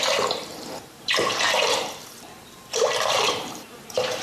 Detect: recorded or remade remade